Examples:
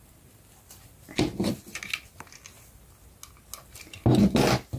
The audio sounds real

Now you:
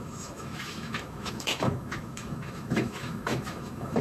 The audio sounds fake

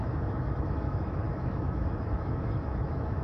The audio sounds fake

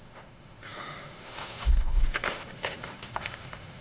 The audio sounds fake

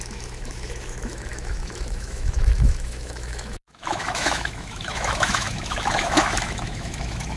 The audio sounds fake